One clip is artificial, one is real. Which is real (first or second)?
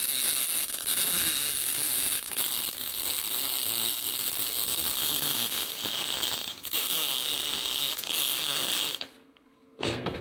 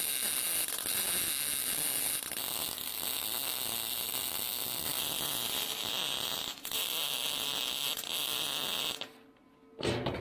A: second